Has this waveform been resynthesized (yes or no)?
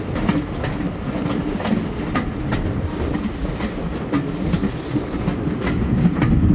no